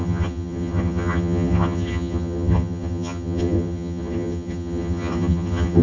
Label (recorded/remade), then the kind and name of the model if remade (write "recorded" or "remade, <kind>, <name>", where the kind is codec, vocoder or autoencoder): remade, vocoder, HiFi-GAN